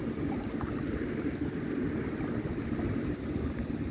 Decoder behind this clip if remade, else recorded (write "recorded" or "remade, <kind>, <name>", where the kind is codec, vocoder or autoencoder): recorded